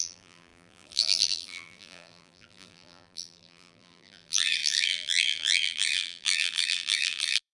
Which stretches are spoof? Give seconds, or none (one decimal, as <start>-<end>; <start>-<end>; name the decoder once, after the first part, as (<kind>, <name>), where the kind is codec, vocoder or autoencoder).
0.0-7.5 (vocoder, BigVGAN v2)